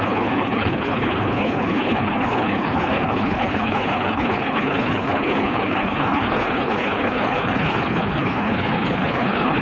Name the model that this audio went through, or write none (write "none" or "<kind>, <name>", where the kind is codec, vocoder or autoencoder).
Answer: codec, HILCodec